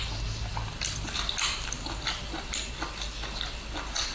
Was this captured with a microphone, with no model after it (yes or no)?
yes